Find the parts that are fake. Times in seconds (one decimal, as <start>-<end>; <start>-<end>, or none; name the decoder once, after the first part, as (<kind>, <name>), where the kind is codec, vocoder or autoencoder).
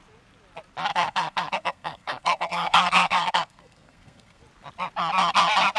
0.9-4.4 (codec, SNAC)